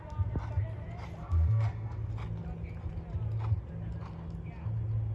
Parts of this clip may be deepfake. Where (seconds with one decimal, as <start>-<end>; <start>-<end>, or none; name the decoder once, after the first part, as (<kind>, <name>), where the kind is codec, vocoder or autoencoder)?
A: 1.2-2.1 (codec, SNAC)